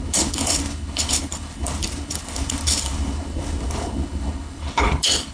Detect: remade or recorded remade